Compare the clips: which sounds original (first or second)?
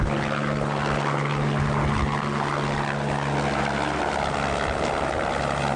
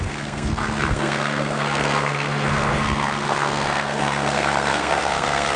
first